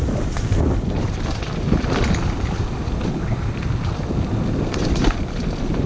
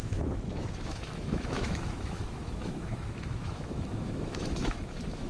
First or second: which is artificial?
second